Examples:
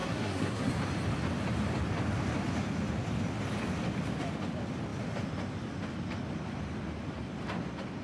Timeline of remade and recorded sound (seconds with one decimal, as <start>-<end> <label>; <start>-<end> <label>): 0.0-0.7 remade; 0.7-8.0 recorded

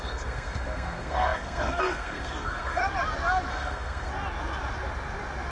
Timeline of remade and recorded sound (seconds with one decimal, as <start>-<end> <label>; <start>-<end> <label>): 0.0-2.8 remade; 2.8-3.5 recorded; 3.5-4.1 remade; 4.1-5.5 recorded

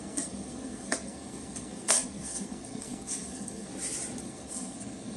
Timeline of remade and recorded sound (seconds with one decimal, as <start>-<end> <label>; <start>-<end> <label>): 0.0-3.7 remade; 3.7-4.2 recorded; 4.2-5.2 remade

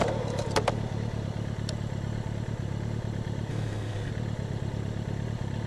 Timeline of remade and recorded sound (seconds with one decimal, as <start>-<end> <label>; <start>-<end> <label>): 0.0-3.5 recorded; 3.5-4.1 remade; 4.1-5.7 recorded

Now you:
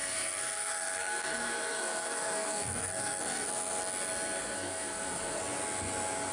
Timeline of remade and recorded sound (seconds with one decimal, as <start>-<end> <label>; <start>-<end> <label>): 0.0-3.8 remade; 3.8-4.4 recorded; 4.4-5.4 remade; 5.4-6.3 recorded

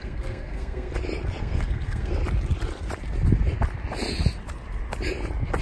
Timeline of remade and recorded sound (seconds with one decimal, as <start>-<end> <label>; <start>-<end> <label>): 0.0-0.9 remade; 0.9-1.4 recorded; 1.4-2.1 remade; 2.1-5.6 recorded

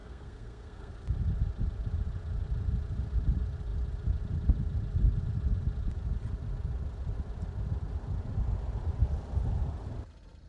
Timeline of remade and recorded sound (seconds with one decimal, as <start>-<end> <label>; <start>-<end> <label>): 0.0-0.9 remade; 0.9-10.5 recorded

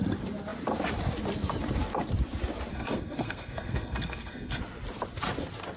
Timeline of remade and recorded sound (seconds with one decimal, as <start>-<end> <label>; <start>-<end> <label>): 0.0-2.7 recorded; 2.7-4.6 remade; 4.6-5.8 recorded